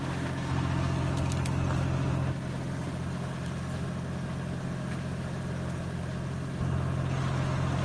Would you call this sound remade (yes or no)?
no